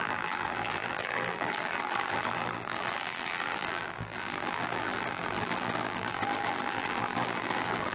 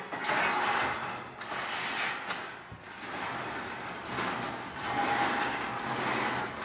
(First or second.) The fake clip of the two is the first